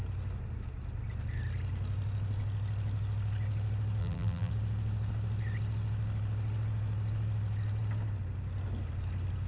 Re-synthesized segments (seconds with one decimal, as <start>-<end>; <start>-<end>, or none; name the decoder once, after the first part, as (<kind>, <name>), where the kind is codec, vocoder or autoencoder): 4.0-4.5 (vocoder, BigVGAN v2)